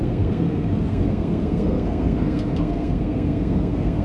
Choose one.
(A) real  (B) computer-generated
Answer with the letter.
B